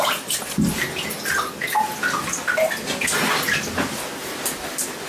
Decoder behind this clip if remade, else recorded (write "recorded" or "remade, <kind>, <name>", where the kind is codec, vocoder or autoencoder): recorded